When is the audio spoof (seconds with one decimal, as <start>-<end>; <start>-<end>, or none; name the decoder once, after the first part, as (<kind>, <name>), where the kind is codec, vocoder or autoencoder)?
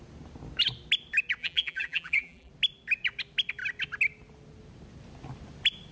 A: 1.4-2.5 (vocoder, BigVGAN v2)